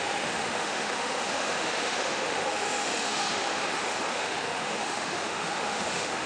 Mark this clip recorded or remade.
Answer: remade